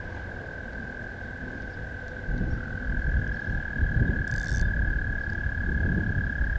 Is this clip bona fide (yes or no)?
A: yes